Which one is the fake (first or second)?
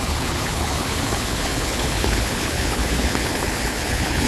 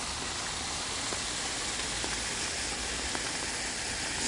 first